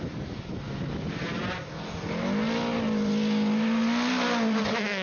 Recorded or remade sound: recorded